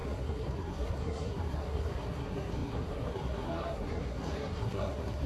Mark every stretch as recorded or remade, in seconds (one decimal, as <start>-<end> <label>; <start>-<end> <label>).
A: 0.0-5.3 remade